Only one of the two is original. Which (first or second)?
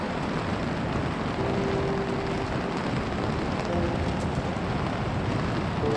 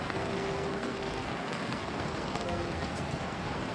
first